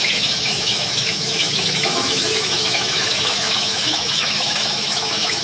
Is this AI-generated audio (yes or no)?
yes